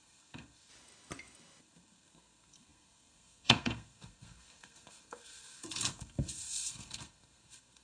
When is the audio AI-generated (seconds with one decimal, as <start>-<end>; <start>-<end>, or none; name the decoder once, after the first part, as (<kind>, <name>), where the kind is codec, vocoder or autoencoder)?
0.0-0.7 (codec, SNAC); 1.6-7.8